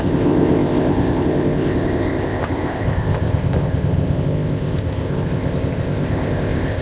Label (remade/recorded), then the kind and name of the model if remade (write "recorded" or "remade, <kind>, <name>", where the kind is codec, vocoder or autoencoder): remade, codec, ZipCodec